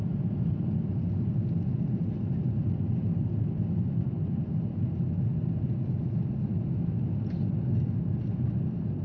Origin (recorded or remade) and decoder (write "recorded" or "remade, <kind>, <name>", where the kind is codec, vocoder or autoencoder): recorded